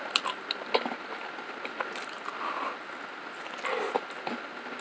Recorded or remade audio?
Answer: recorded